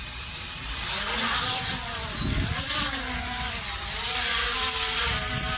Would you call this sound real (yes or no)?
yes